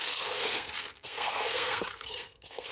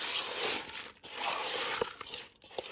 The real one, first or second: second